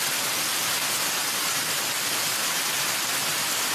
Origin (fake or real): real